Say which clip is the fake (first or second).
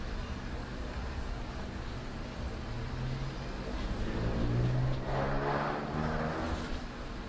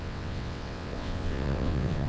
second